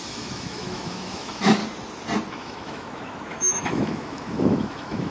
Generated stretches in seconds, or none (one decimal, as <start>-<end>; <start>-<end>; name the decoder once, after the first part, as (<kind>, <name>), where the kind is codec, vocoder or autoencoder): 0.0-1.6 (autoencoder, DAC-VAE); 2.3-5.1